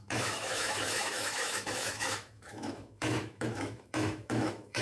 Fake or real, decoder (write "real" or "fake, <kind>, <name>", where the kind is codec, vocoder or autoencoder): fake, autoencoder, DAC-VAE